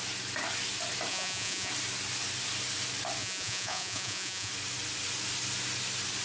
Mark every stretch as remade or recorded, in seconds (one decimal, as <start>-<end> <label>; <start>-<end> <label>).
0.0-1.1 recorded; 1.1-1.7 remade; 1.7-3.2 recorded; 3.2-4.5 remade; 4.5-6.2 recorded